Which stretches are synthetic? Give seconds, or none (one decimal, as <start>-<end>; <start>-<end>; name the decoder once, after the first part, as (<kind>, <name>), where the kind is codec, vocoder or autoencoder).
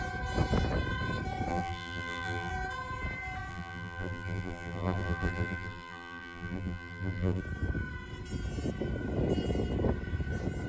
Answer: 1.5-2.5 (vocoder, BigVGAN v2); 3.5-7.4